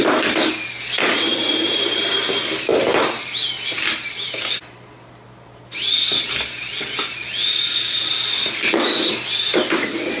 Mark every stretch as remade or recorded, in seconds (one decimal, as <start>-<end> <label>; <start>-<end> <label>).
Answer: 0.0-10.2 recorded

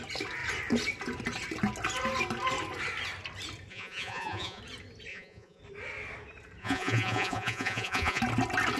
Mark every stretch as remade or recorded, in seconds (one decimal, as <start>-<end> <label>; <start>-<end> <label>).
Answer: 0.0-3.7 recorded; 3.7-4.6 remade; 4.6-5.1 recorded; 5.1-5.6 remade; 5.6-6.6 recorded; 6.6-8.2 remade; 8.2-8.8 recorded

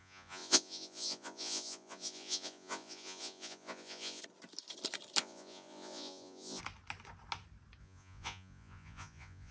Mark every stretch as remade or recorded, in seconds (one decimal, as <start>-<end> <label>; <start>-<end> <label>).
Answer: 0.0-4.2 remade; 4.2-5.2 recorded; 5.2-6.6 remade; 6.6-7.8 recorded; 7.8-9.5 remade

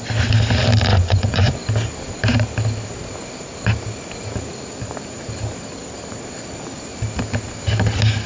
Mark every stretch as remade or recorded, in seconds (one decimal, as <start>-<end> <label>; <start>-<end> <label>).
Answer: 0.0-0.9 recorded; 0.9-1.5 remade; 1.5-8.3 recorded

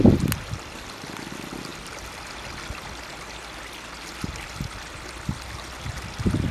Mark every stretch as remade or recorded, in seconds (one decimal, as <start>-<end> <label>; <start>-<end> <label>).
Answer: 0.0-6.5 recorded

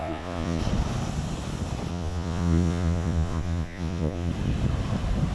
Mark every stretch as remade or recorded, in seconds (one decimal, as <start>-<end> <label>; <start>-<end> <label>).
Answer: 0.0-0.6 remade; 0.6-1.9 recorded; 1.9-4.3 remade; 4.3-5.3 recorded

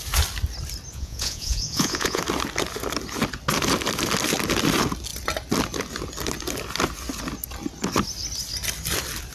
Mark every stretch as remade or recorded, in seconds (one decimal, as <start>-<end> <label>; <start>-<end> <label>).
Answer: 0.0-0.9 recorded; 0.9-2.2 remade; 2.2-9.3 recorded